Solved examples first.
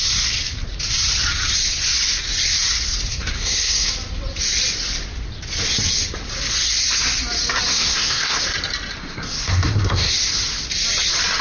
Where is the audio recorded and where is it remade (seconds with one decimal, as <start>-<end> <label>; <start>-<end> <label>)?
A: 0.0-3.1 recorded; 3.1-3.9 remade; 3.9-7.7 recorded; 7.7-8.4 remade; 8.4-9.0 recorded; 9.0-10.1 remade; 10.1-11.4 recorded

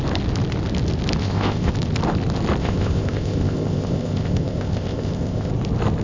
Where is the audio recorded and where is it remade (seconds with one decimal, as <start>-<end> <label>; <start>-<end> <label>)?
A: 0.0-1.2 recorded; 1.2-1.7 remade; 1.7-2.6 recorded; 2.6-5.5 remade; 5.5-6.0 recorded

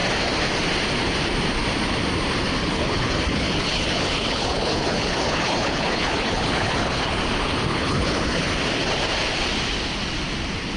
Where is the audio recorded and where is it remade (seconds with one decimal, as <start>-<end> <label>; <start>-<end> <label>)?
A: 0.0-2.6 recorded; 2.6-7.2 remade; 7.2-7.7 recorded; 7.7-8.5 remade; 8.5-10.8 recorded